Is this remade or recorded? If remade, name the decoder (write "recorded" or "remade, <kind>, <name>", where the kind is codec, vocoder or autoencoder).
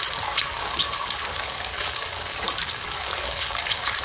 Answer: remade, codec, DAC